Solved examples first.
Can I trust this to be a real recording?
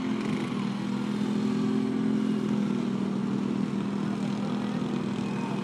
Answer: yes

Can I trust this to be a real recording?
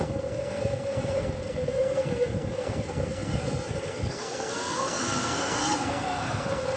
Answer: no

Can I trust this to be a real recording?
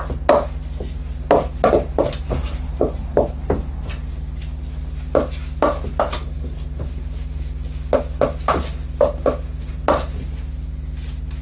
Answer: yes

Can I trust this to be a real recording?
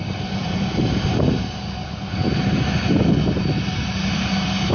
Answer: yes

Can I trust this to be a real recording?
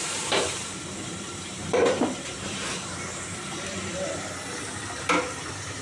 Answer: no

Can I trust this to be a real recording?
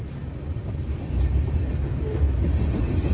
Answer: no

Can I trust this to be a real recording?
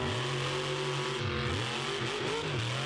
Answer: yes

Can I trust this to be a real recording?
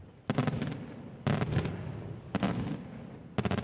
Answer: yes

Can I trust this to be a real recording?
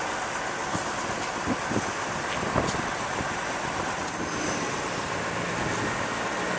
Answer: yes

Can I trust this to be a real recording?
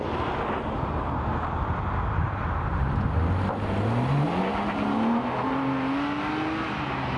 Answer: yes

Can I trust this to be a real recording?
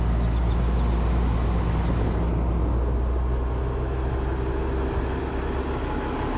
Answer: yes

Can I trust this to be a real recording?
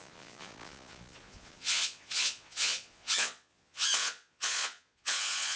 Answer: no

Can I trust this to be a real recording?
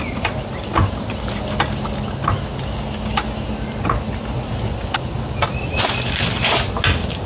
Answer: yes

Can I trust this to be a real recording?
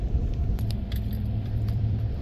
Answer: no